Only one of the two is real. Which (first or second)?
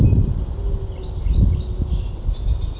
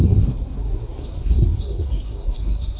first